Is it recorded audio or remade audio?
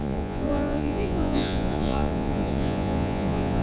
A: remade